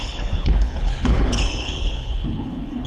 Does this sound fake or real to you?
fake